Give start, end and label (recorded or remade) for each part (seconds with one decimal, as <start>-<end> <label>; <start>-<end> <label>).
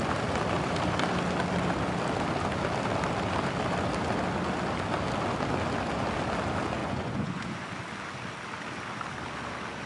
0.0-6.8 recorded; 6.8-7.7 remade; 7.7-9.9 recorded